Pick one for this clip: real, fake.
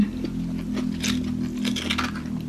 real